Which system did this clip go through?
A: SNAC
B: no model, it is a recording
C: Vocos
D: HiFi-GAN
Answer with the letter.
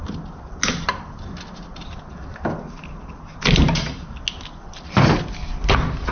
B